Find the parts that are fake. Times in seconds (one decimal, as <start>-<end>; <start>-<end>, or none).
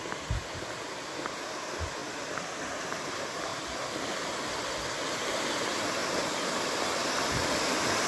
0.0-2.0; 3.1-3.5; 5.4-8.1